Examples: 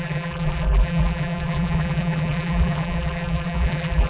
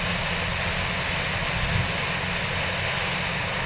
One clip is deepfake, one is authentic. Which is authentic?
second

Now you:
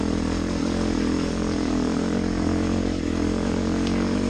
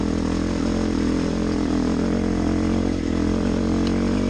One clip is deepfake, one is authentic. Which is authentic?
second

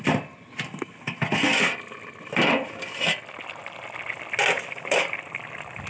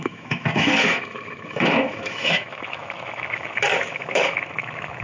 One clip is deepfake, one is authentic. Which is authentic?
first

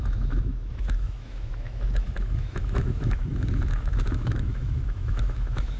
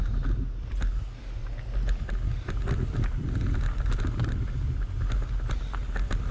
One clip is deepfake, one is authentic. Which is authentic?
second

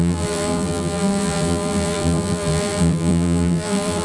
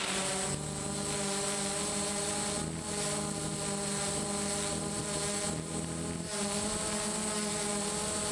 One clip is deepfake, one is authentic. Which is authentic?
second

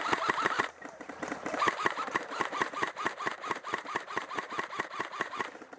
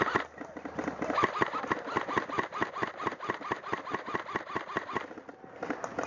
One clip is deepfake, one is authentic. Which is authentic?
second